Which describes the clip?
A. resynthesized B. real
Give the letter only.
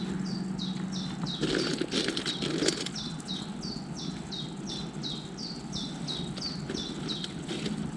B